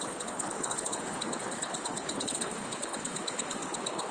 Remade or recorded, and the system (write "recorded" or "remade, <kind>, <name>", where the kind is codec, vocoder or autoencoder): remade, codec, HILCodec